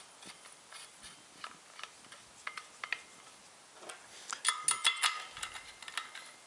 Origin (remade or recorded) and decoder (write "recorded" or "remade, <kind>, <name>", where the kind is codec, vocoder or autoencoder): recorded